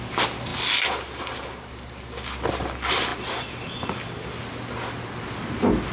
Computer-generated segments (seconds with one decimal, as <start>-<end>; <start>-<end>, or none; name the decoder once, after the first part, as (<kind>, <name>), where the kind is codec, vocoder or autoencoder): none